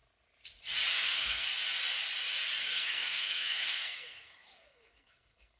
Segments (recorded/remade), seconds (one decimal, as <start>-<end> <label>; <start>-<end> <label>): 0.0-0.9 recorded; 0.9-1.5 remade; 1.5-2.6 recorded; 2.6-5.6 remade